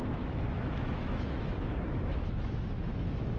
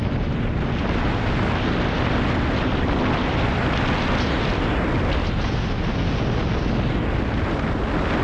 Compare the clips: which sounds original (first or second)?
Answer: second